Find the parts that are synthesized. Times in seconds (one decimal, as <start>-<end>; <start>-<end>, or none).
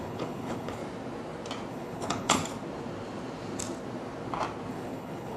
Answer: 0.0-0.8; 1.7-2.4; 4.7-5.4